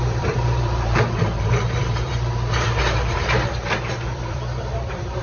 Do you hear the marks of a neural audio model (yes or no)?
yes